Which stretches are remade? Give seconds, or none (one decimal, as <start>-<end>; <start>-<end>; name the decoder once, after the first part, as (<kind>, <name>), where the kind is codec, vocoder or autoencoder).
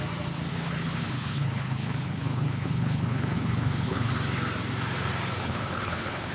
0.5-4.1 (codec, HILCodec); 5.4-6.3